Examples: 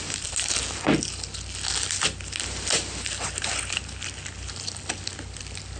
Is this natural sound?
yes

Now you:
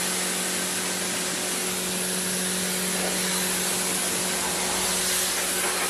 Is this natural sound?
yes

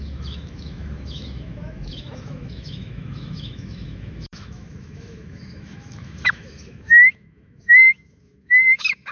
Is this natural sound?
no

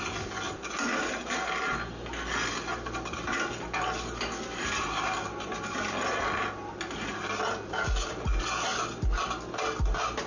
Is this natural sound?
yes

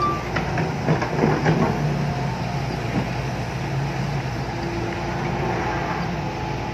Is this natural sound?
yes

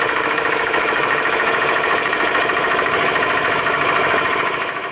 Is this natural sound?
no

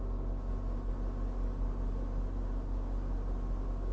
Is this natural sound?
yes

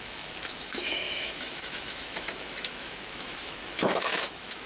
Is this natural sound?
no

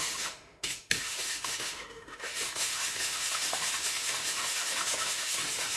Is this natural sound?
no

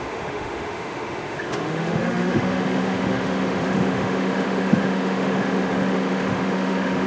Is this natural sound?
no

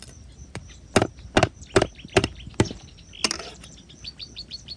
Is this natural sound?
yes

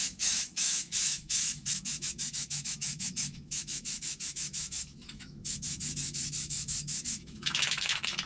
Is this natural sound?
no